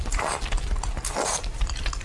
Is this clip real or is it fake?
real